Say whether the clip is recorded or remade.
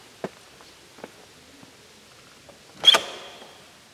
recorded